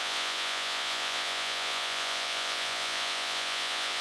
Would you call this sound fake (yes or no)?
yes